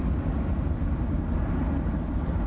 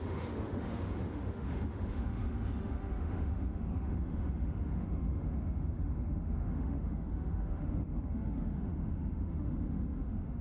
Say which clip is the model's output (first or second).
second